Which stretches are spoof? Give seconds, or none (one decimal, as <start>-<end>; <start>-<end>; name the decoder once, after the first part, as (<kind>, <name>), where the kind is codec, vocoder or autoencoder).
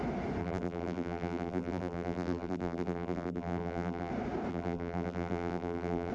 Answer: 0.4-4.1 (vocoder, BigVGAN v2); 4.5-6.1